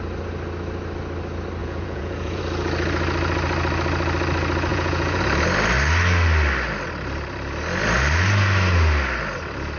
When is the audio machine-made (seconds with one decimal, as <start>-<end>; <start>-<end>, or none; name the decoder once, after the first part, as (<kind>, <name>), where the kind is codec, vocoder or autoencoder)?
1.6-2.4 (vocoder, Vocos); 4.7-5.2